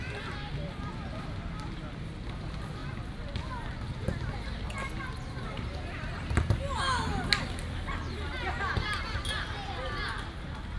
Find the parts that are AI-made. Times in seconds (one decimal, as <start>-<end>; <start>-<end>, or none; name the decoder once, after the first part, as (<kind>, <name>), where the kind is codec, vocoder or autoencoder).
none